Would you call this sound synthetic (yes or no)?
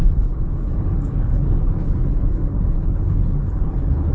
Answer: yes